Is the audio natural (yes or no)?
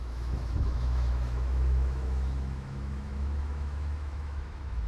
no